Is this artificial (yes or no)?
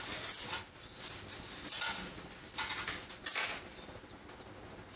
no